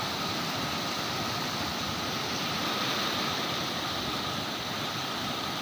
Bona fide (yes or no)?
yes